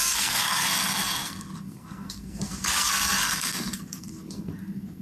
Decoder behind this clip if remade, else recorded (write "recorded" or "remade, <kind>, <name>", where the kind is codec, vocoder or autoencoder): remade, codec, SNAC